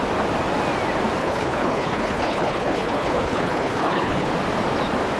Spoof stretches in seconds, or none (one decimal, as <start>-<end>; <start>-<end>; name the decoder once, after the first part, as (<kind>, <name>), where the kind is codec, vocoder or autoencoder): 1.2-4.3 (codec, HILCodec)

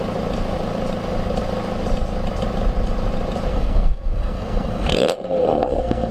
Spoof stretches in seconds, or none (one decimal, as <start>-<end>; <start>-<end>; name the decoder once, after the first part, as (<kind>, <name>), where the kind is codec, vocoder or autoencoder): 3.5-6.1 (codec, SNAC)

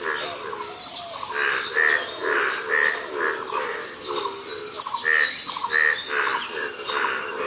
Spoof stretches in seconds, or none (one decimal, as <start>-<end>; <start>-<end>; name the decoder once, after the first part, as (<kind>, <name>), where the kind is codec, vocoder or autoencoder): none

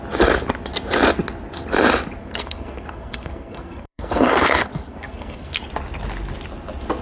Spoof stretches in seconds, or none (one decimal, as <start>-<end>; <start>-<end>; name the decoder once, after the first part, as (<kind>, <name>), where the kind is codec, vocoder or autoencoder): 2.2-5.6 (codec, SNAC)

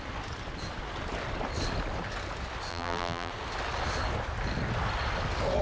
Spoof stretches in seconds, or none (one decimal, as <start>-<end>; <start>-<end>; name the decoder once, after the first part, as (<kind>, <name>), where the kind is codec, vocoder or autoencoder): 2.7-3.3 (vocoder, BigVGAN v2)

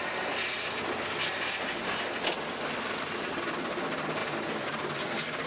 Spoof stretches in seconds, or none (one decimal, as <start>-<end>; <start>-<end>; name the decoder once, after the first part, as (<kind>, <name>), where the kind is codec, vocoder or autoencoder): 4.2-5.5 (vocoder, BigVGAN v2)